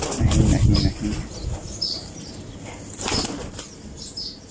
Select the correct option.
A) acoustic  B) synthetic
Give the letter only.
A